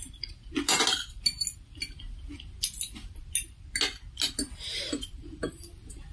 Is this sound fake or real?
real